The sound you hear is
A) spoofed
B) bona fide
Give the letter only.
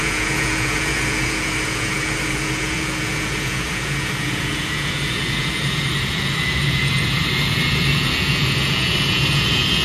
A